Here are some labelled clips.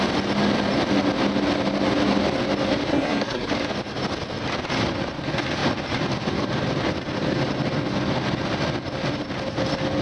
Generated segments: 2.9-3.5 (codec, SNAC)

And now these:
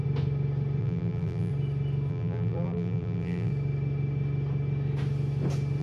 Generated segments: 0.8-1.5 (vocoder, BigVGAN v2); 2.1-3.5

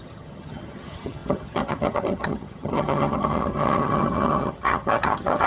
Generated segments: 0.0-5.5 (vocoder, HiFi-GAN)

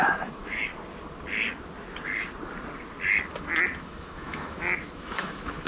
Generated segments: 0.0-0.7 (autoencoder, DAC-VAE); 3.8-5.7

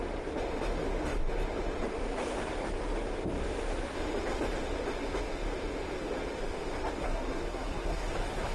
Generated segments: 7.0-8.1 (codec, SNAC)